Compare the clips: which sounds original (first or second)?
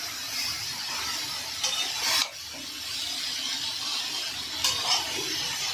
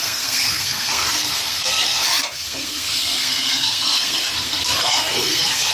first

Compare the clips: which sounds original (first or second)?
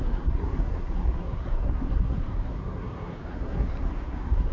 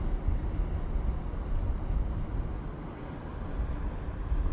second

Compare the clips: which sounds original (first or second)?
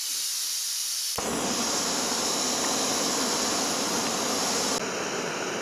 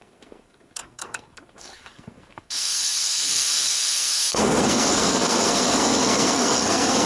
first